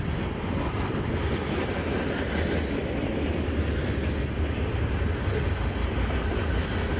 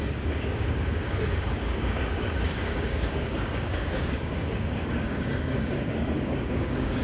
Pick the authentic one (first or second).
first